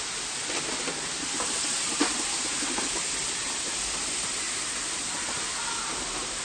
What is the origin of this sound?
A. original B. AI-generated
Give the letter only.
A